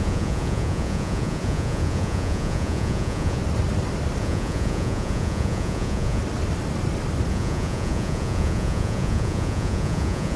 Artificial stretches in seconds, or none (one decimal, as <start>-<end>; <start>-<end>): 0.0-3.4; 4.2-6.2; 7.3-10.4

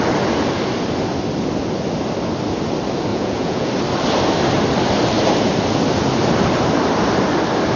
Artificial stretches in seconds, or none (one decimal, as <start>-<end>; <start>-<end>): 3.1-3.7

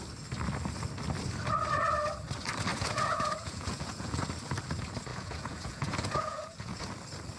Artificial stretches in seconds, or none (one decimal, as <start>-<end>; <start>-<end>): 2.7-4.2; 5.1-6.8

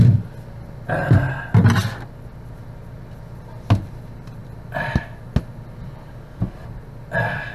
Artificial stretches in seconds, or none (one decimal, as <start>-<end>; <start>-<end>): none

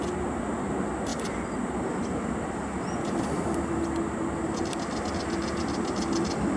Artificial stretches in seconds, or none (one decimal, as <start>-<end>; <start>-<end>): none